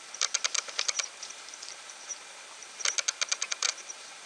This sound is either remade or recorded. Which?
recorded